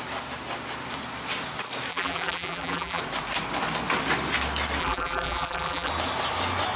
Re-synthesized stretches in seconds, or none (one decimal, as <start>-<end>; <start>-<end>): 1.9-3.0; 4.8-5.9